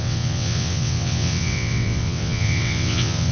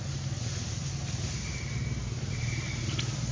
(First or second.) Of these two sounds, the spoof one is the first